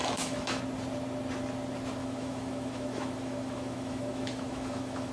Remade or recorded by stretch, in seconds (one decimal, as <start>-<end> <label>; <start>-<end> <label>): 0.0-0.6 remade; 0.6-2.0 recorded; 2.0-5.1 remade